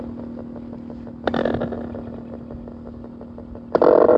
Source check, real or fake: real